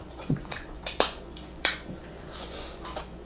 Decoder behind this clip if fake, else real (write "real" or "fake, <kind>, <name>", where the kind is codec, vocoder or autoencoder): fake, vocoder, Vocos